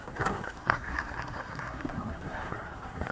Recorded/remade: remade